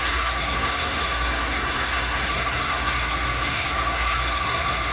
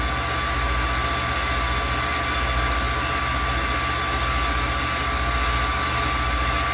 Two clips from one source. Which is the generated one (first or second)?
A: first